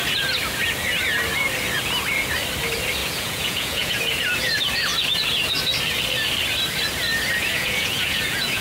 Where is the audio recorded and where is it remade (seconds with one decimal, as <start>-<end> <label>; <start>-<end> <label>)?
0.0-3.0 recorded; 3.0-4.0 remade; 4.0-7.4 recorded; 7.4-8.6 remade